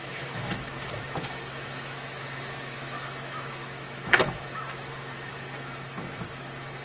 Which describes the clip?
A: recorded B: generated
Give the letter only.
B